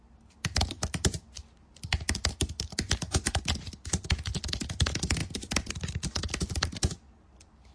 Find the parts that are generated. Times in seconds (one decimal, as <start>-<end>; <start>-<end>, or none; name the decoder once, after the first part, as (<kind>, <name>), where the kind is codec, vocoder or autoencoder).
none